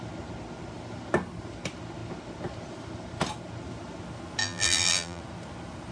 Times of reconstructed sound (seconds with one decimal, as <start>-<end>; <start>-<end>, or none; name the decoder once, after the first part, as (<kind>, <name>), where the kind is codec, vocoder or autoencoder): 4.4-5.2 (vocoder, BigVGAN v2)

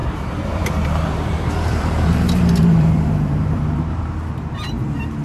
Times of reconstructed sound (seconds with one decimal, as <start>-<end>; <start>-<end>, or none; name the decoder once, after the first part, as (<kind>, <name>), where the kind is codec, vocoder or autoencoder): 0.0-5.2 (vocoder, BigVGAN v2)

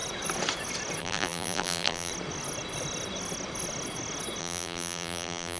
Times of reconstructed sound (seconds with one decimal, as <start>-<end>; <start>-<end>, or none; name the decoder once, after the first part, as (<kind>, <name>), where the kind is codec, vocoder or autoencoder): 1.0-2.1 (vocoder, BigVGAN v2); 4.4-5.6

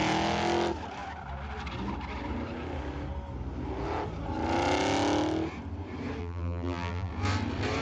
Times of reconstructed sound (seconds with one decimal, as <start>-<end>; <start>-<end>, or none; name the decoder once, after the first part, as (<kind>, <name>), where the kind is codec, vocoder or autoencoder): 6.2-7.1 (vocoder, BigVGAN v2)

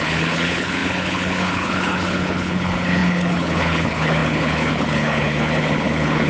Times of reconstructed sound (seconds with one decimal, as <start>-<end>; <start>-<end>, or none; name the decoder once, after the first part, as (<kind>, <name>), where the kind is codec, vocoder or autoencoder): 0.0-6.3 (codec, HILCodec)

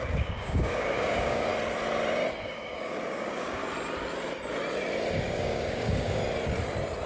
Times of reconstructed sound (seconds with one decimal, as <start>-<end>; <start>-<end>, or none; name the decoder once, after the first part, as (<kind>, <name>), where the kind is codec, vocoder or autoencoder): 0.0-1.5 (codec, DAC); 2.3-3.6; 5.1-6.2

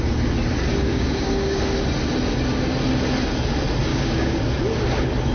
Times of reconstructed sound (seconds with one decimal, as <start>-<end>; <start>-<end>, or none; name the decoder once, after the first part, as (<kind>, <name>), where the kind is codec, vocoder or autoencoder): 0.9-1.6 (codec, DAC); 3.9-4.4